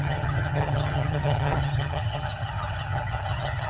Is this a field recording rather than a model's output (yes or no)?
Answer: no